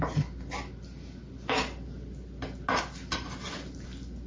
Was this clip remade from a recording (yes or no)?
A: no